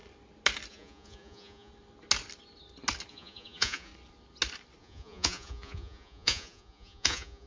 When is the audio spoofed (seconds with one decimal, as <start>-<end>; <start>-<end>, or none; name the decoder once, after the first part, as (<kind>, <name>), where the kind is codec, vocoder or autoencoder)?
0.7-1.7 (vocoder, Vocos); 3.1-3.9; 4.8-7.5